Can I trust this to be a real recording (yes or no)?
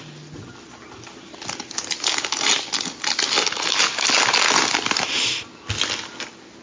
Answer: yes